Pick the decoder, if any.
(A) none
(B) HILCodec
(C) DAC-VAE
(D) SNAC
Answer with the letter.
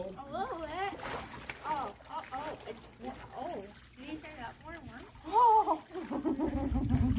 A